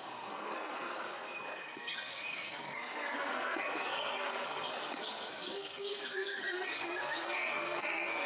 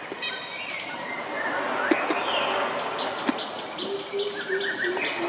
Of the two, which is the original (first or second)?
second